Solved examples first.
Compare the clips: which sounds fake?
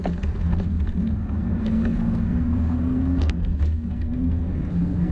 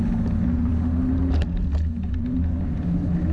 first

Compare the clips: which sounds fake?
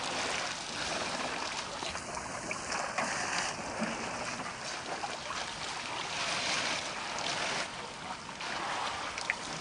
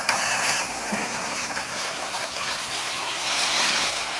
second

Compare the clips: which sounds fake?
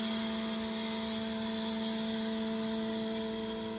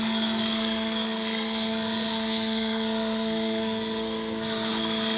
second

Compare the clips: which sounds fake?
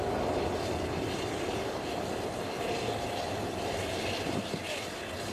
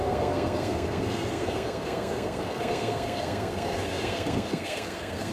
second